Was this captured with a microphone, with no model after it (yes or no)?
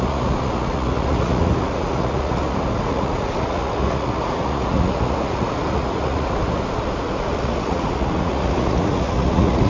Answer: no